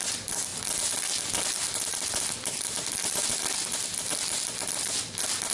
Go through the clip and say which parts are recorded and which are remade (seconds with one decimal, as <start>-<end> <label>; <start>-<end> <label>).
0.0-5.5 recorded